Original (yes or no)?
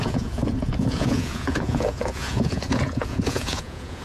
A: no